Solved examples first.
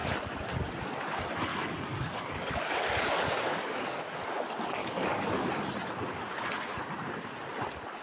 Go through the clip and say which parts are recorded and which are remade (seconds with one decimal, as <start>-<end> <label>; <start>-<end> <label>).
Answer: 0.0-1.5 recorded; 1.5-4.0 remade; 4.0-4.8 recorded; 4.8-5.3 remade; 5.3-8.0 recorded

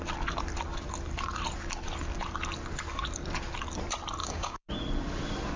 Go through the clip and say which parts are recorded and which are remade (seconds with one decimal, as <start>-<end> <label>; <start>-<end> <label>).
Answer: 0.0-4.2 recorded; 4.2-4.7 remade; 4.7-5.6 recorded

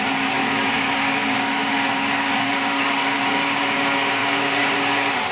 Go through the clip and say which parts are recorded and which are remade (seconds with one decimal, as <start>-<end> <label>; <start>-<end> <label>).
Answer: 0.0-0.4 recorded; 0.4-3.6 remade; 3.6-4.2 recorded; 4.2-5.3 remade

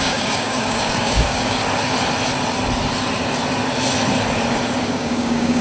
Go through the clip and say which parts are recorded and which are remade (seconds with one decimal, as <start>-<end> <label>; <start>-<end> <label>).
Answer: 0.0-1.6 remade; 1.6-4.9 recorded; 4.9-5.6 remade

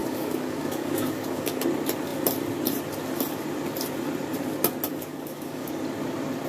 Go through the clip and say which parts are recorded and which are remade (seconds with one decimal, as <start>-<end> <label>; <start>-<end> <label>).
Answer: 0.0-1.6 remade; 1.6-4.9 recorded; 4.9-5.7 remade; 5.7-6.5 recorded

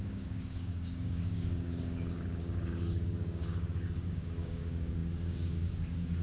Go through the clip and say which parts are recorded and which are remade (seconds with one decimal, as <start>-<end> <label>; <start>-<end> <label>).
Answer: 0.0-6.2 remade

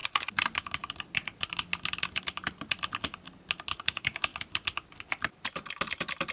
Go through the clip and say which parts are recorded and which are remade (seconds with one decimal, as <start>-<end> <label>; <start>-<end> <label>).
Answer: 0.0-3.8 recorded; 3.8-4.3 remade; 4.3-6.3 recorded